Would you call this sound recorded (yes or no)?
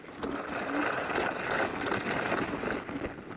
yes